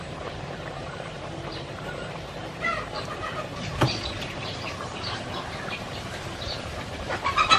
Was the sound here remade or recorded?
remade